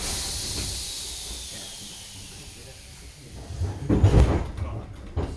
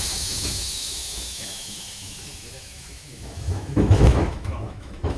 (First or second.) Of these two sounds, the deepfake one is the second